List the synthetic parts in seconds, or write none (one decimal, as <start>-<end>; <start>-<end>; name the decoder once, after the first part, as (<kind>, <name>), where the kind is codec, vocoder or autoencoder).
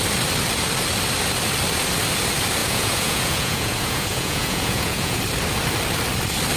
2.6-5.2 (vocoder, Vocos)